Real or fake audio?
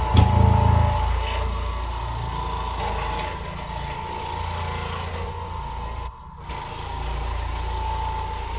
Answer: real